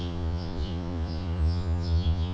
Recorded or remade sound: remade